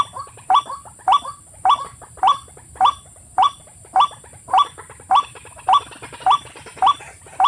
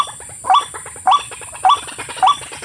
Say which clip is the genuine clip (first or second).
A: second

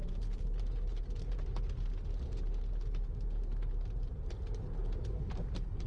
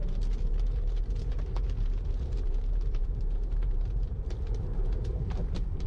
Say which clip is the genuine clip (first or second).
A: first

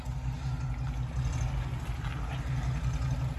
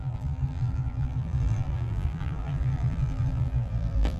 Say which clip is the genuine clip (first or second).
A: first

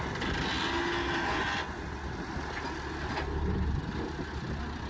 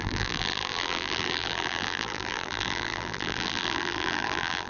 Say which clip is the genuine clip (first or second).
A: first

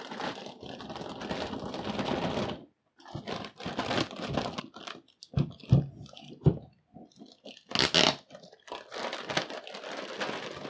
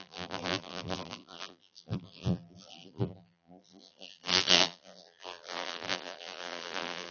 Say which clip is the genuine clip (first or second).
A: first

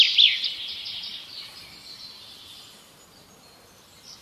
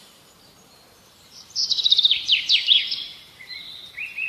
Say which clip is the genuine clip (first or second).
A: first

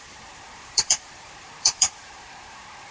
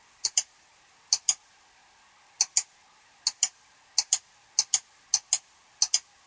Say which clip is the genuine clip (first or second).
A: second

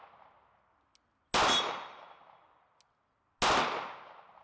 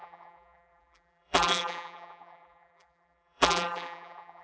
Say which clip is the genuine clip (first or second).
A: first